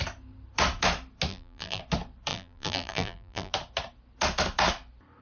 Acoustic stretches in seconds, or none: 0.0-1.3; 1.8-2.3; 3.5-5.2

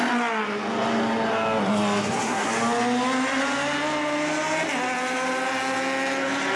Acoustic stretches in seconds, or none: 0.0-2.0; 2.5-6.6

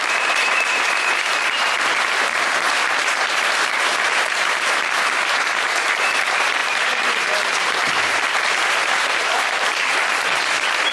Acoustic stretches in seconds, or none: none

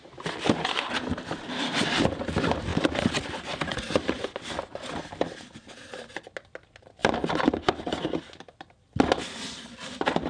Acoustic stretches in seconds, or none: 0.0-10.3

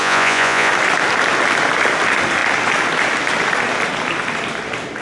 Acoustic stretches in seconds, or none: 0.7-5.0

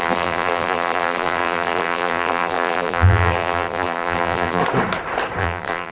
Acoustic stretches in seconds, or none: 4.6-5.4

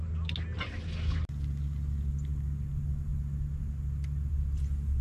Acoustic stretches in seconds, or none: 0.0-5.0